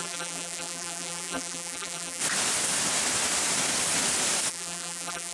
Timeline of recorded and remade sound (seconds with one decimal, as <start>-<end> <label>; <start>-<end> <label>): 0.0-2.2 remade; 2.2-4.5 recorded; 4.5-5.3 remade